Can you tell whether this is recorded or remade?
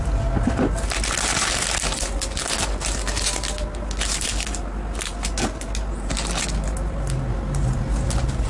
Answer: recorded